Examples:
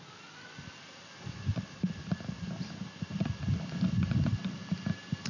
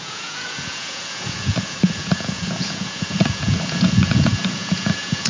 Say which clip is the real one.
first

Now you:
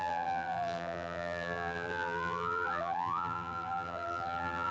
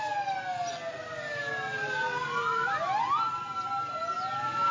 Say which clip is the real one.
second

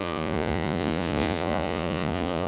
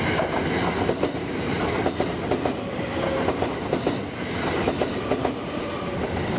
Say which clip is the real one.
second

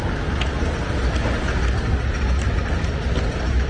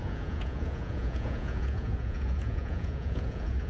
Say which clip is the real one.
first